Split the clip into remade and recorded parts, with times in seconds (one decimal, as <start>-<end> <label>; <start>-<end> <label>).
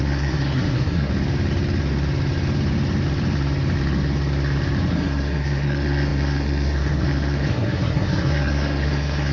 0.0-1.1 remade; 1.1-4.9 recorded; 4.9-9.3 remade